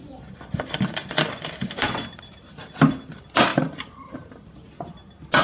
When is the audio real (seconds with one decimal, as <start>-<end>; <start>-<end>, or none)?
0.0-3.5; 4.3-5.4